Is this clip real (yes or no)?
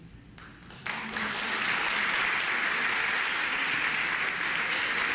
yes